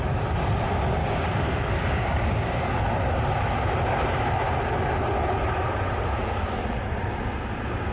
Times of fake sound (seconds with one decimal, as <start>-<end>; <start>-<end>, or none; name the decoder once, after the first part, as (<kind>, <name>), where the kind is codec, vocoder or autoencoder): 1.0-2.7 (codec, DAC)